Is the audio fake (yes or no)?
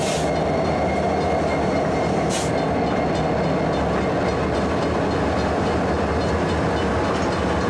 no